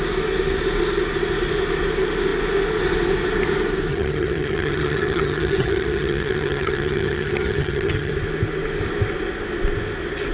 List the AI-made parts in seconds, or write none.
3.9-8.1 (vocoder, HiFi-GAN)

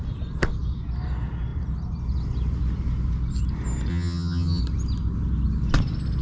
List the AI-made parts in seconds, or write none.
3.9-4.6 (vocoder, HiFi-GAN)

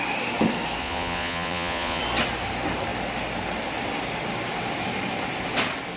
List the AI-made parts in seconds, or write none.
0.8-2.0 (vocoder, Vocos)